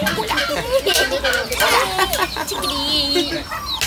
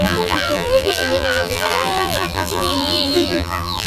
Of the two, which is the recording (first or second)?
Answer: first